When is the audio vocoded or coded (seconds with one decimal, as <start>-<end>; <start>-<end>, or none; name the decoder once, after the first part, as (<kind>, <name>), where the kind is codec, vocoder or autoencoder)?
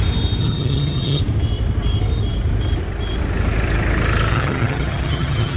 0.4-1.2 (vocoder, HiFi-GAN); 4.3-5.6